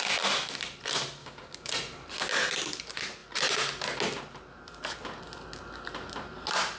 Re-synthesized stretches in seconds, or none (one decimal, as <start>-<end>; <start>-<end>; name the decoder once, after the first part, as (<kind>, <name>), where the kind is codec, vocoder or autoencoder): 1.2-1.7 (codec, DAC)